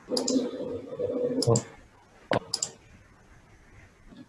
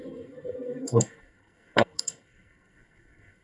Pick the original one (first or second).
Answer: first